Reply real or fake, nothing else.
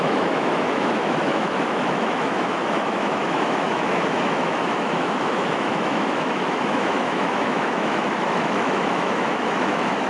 fake